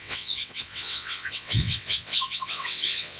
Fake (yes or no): yes